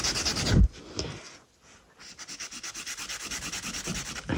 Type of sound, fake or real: real